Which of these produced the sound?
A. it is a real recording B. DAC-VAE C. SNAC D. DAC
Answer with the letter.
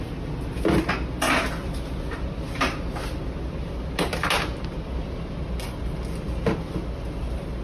A